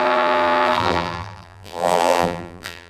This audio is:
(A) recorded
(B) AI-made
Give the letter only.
B